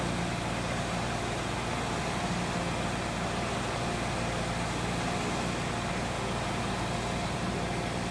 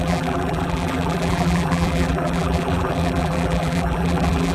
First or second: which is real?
first